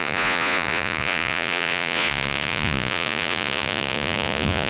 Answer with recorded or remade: remade